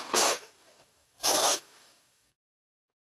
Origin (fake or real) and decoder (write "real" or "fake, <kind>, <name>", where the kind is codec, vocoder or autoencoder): fake, codec, DAC